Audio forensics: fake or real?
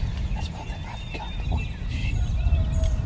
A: real